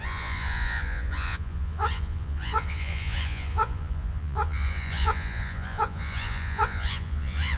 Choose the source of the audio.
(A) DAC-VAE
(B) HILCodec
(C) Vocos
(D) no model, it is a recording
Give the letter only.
C